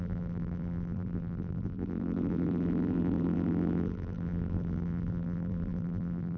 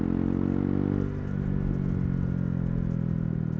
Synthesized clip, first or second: first